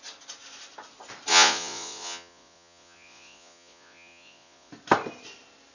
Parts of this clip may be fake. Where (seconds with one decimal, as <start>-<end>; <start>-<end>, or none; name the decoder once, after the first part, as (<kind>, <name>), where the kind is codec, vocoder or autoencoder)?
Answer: 1.3-4.7 (vocoder, Vocos)